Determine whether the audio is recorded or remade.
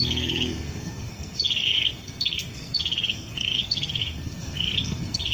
remade